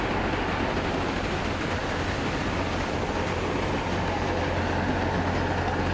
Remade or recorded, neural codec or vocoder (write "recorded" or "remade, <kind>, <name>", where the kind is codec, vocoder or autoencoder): recorded